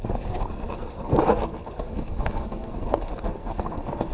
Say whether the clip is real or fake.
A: fake